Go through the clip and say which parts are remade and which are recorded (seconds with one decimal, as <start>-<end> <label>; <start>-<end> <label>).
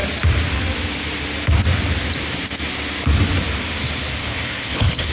0.0-4.2 recorded; 4.2-5.1 remade